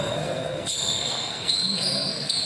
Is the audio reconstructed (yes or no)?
yes